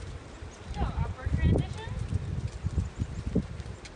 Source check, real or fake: real